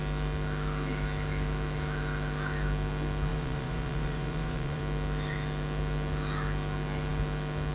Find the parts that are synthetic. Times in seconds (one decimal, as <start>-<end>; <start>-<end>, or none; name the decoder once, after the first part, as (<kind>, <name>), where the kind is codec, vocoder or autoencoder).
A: 3.3-4.8 (vocoder, Vocos)